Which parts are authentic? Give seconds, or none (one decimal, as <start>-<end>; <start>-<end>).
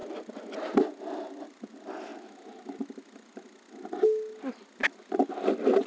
0.0-5.9